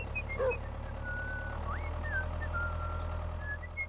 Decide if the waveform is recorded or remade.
recorded